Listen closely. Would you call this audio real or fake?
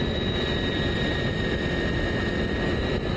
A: fake